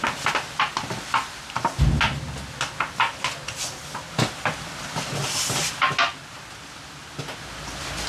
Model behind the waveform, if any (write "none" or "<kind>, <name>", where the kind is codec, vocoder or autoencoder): none